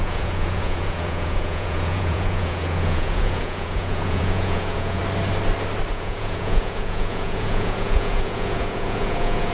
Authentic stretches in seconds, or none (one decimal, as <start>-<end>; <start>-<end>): 5.0-5.9